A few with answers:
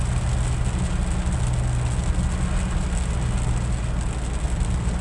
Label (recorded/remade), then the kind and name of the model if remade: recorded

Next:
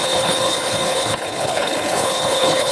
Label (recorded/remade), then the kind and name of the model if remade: remade, codec, HILCodec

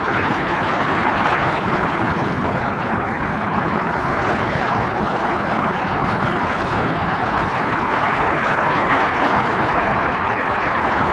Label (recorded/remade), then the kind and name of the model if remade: remade, codec, HILCodec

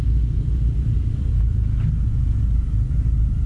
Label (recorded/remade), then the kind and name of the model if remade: recorded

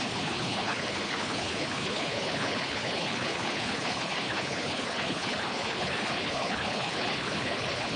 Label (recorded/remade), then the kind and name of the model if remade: remade, codec, HILCodec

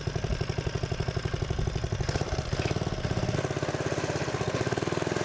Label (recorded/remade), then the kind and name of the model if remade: recorded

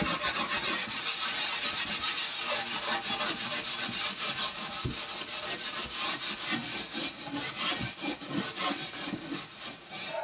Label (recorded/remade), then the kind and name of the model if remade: recorded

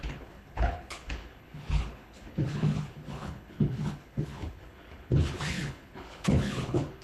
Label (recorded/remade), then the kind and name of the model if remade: remade, codec, HILCodec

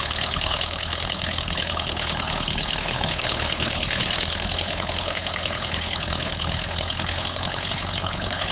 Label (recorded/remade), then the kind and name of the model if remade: remade, codec, HILCodec